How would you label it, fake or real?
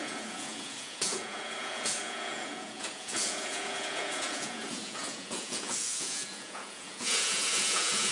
fake